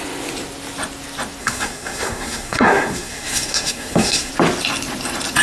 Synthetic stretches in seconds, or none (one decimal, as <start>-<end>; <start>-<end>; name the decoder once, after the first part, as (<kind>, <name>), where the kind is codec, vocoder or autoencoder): 1.4-4.3 (codec, SNAC)